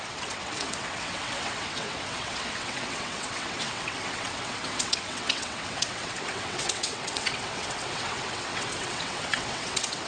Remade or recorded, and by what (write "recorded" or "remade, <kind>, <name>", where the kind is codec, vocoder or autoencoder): remade, vocoder, WaveNeXt